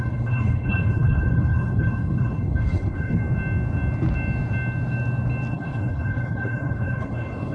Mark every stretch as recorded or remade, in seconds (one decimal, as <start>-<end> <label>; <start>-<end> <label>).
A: 0.0-3.2 remade; 3.2-5.5 recorded; 5.5-7.5 remade